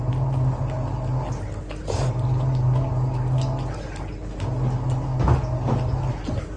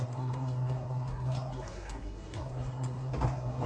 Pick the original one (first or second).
first